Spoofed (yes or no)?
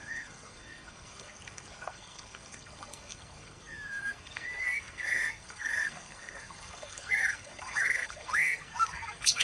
yes